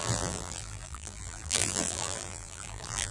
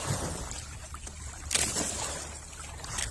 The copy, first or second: first